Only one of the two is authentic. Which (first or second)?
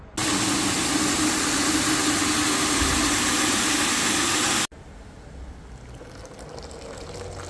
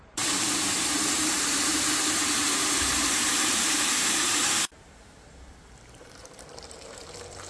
first